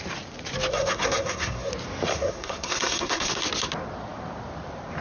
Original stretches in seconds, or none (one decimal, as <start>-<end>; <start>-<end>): 0.0-0.7; 1.7-2.1; 3.4-5.0